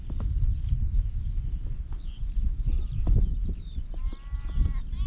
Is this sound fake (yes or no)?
no